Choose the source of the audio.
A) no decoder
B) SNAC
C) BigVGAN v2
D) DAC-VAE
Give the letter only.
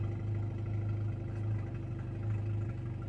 A